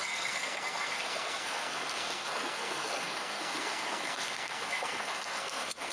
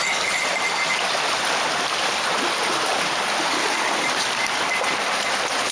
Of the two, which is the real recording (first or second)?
second